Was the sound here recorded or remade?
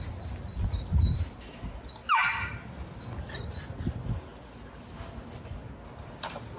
recorded